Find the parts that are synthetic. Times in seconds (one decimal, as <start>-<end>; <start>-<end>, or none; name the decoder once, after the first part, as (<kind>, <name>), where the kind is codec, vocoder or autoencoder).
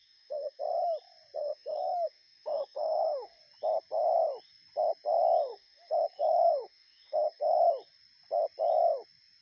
0.0-0.6 (autoencoder, DAC-VAE); 1.4-3.4; 5.5-7.6